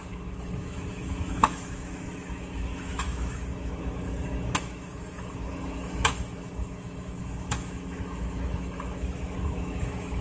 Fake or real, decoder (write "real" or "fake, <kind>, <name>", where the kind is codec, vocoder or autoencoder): fake, autoencoder, DAC-VAE